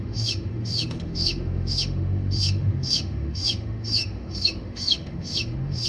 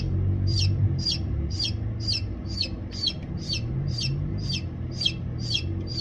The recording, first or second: second